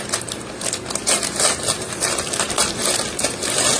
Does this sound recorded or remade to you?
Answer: recorded